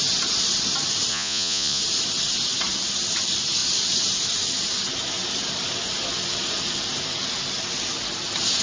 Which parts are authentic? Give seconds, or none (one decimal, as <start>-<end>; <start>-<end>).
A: 0.0-1.1; 1.8-8.6